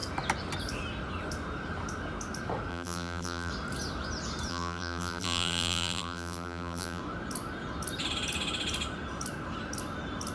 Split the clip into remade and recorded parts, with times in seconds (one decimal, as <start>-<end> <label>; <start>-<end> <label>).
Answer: 0.0-2.7 recorded; 2.7-3.5 remade; 3.5-4.5 recorded; 4.5-7.0 remade; 7.0-10.3 recorded